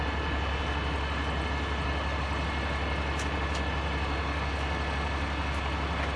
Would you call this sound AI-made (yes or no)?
no